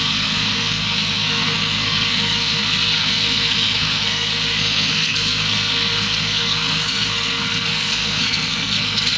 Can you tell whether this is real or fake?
fake